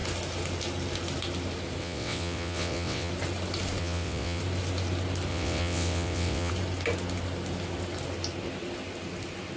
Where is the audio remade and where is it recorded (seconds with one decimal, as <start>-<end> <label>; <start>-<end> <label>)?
0.0-1.8 recorded; 1.8-3.1 remade; 3.1-3.8 recorded; 3.8-4.4 remade; 4.4-5.3 recorded; 5.3-6.5 remade; 6.5-9.6 recorded